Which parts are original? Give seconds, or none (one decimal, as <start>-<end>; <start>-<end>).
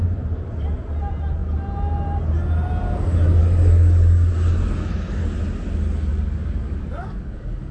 0.0-3.4; 4.3-6.1